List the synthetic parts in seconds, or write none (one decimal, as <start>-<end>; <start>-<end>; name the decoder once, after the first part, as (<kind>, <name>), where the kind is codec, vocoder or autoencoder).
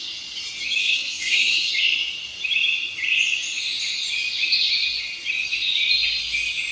0.8-1.7 (codec, SNAC)